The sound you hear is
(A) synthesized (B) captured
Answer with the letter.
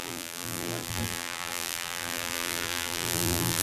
A